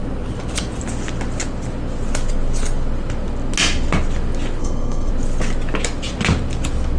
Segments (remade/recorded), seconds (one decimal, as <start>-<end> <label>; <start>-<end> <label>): 0.0-4.6 recorded; 4.6-5.1 remade; 5.1-7.0 recorded